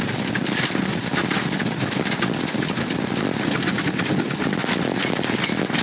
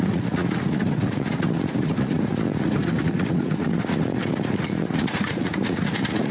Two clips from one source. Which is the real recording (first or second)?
first